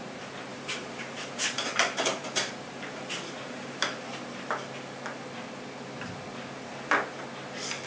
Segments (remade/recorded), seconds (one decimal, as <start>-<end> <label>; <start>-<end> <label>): 0.0-0.5 recorded; 0.5-3.8 remade; 3.8-7.9 recorded